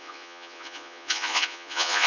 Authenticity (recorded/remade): remade